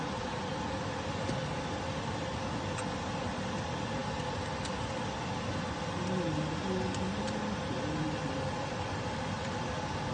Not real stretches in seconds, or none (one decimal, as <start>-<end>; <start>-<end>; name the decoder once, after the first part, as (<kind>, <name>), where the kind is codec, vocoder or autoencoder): none